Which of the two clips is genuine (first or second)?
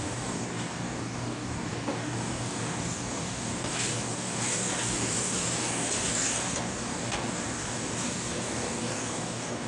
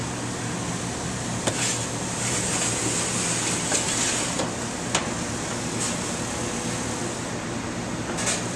second